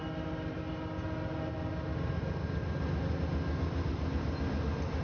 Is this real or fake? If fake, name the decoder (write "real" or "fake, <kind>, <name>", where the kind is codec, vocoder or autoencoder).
real